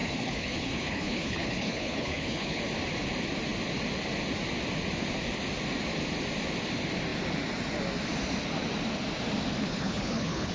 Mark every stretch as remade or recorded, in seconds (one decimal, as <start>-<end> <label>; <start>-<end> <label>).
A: 0.0-2.6 remade; 2.6-9.6 recorded; 9.6-10.5 remade